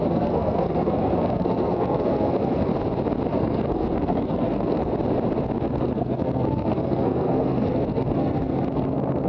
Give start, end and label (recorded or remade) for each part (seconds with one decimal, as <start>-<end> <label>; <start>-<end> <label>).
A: 0.0-2.7 remade; 2.7-3.3 recorded; 3.3-4.9 remade; 4.9-5.6 recorded; 5.6-9.3 remade